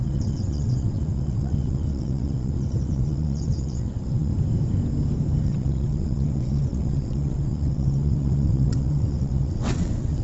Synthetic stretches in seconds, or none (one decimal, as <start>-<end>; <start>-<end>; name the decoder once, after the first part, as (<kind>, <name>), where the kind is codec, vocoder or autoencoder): 0.0-4.3 (vocoder, WaveNeXt); 5.4-10.2